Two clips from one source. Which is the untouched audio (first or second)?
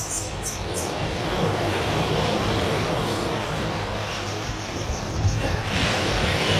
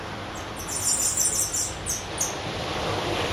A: second